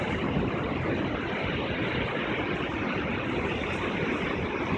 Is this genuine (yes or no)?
yes